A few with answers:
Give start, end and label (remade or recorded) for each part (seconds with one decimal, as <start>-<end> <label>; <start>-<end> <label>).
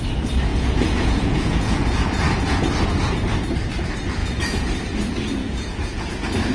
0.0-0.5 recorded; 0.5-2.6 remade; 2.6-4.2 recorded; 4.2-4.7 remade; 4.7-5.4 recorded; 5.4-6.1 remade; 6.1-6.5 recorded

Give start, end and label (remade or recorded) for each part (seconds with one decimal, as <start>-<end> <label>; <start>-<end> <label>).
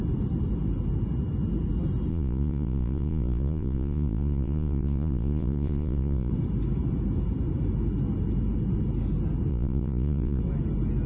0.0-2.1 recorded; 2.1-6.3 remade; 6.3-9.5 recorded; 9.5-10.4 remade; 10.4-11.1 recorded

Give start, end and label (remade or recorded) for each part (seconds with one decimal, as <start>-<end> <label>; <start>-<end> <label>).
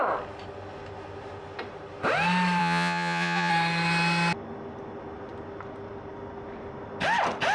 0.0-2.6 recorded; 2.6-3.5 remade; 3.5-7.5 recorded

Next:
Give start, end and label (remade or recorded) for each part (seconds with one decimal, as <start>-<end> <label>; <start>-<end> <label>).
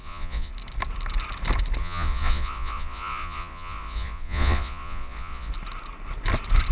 0.0-0.5 remade; 0.5-1.8 recorded; 1.8-5.5 remade; 5.5-6.7 recorded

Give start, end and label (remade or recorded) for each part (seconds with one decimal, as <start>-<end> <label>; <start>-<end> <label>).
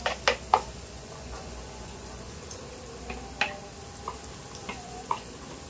0.0-0.5 recorded; 0.5-2.6 remade; 2.6-4.6 recorded; 4.6-5.3 remade; 5.3-5.7 recorded